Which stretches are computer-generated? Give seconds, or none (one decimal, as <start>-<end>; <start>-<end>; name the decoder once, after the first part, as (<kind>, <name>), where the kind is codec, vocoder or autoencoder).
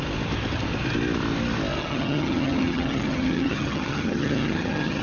1.8-5.0 (vocoder, HiFi-GAN)